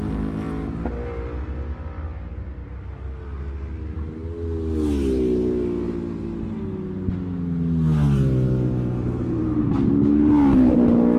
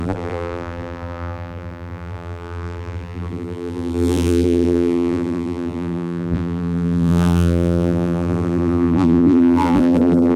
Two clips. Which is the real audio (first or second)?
first